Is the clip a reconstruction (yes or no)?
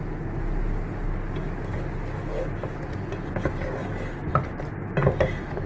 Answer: no